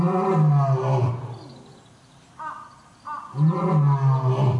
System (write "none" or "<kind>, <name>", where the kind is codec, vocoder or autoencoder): none